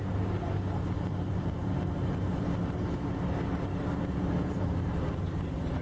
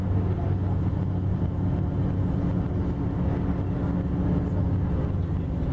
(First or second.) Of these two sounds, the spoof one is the first